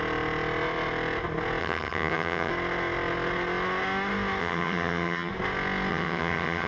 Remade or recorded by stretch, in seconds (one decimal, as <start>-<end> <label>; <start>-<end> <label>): 0.0-1.6 recorded; 1.6-2.5 remade; 2.5-4.4 recorded; 4.4-5.3 remade; 5.3-5.9 recorded; 5.9-6.7 remade